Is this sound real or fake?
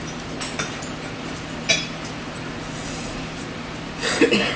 fake